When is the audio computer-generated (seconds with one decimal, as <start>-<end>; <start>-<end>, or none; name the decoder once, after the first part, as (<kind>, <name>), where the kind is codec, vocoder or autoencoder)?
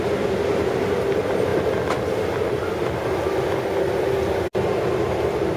none